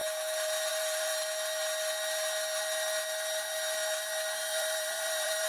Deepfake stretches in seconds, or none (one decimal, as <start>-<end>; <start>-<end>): 0.7-1.1; 4.4-5.5